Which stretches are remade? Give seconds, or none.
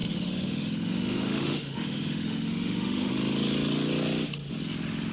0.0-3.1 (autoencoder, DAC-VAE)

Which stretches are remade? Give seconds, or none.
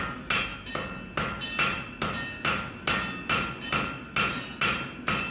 none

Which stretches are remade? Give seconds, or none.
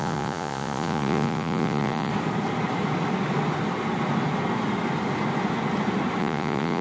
0.0-2.1 (vocoder, Vocos); 6.2-6.8